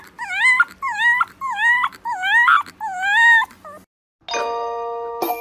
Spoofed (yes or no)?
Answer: no